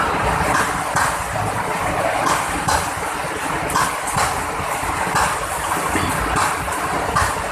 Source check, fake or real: real